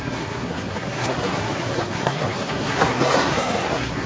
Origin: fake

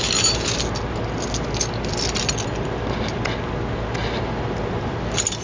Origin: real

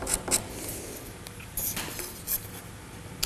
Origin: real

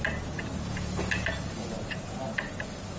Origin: real